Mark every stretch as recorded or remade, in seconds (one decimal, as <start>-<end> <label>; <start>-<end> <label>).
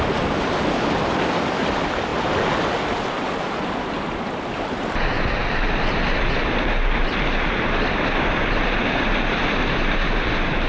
0.0-10.7 recorded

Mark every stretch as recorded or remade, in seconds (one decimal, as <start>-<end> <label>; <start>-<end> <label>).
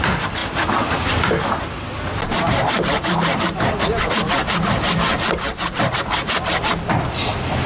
0.0-7.7 recorded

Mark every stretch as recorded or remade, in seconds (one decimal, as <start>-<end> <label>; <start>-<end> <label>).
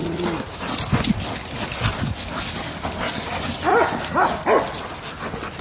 0.0-5.6 recorded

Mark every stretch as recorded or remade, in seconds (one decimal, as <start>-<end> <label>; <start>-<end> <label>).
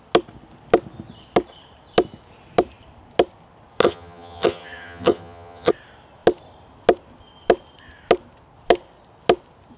0.0-3.8 recorded; 3.8-5.7 remade; 5.7-9.8 recorded